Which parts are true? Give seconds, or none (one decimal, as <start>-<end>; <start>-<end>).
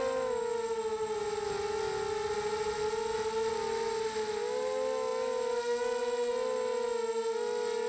0.0-7.9